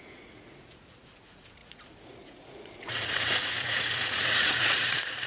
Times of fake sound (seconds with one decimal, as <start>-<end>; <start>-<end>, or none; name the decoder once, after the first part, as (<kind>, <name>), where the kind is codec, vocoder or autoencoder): 0.0-5.3 (vocoder, Vocos)